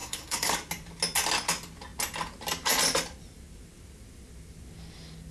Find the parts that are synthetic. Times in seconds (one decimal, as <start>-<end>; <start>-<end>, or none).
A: 0.0-0.5